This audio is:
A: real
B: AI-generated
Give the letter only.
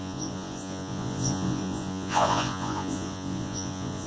B